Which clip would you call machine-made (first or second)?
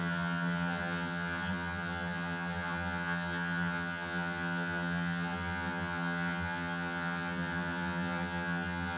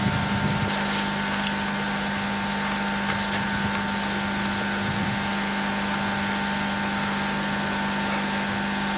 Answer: first